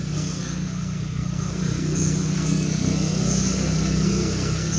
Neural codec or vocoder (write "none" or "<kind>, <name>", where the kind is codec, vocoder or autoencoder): codec, SNAC